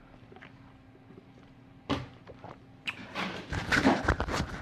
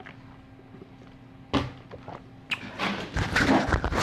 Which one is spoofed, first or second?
first